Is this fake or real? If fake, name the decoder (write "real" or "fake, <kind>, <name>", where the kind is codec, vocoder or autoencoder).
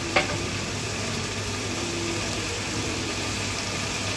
fake, vocoder, BigVGAN v2